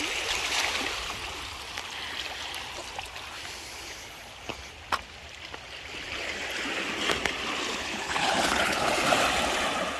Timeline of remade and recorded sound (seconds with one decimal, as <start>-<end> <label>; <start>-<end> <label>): 0.0-7.7 recorded; 7.7-8.9 remade; 8.9-10.0 recorded